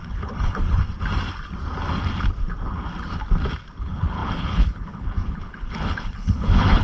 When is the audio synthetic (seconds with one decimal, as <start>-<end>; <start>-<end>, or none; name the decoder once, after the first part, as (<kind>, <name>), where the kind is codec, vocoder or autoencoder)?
0.0-0.8 (codec, HILCodec); 3.8-6.8